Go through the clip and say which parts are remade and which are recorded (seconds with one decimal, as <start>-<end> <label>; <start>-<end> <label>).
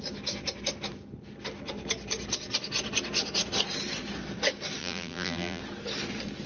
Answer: 0.0-4.8 recorded; 4.8-5.6 remade; 5.6-6.5 recorded